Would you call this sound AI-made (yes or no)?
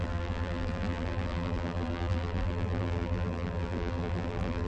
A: yes